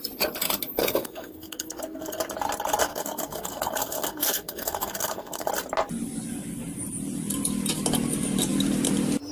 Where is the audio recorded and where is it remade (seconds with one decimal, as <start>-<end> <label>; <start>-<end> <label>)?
0.0-0.8 recorded; 0.8-2.2 remade; 2.2-2.9 recorded; 2.9-5.5 remade; 5.5-9.3 recorded